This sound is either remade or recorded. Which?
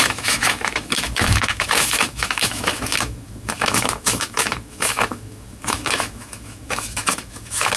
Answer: remade